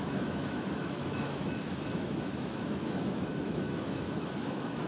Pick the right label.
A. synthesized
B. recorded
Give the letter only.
A